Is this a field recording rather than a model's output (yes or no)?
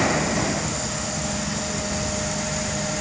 yes